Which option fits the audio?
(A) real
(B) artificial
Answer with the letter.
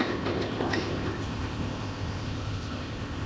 B